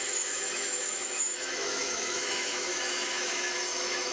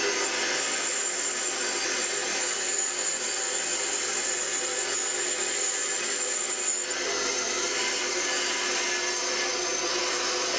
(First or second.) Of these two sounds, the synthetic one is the first